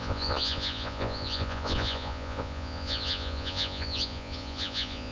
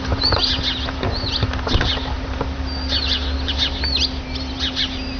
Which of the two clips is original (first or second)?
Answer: second